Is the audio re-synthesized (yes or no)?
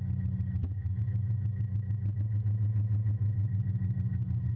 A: no